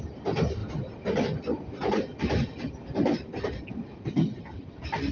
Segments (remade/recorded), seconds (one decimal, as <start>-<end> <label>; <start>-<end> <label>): 0.0-5.1 recorded